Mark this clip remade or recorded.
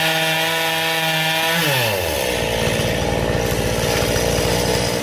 recorded